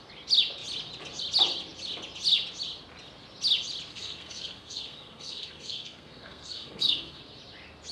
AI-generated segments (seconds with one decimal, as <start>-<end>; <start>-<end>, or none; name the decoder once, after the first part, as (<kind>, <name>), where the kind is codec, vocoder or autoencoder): 3.9-7.2 (codec, SNAC)